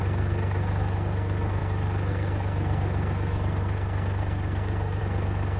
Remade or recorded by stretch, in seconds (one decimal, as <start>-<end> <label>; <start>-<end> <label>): 0.0-5.6 remade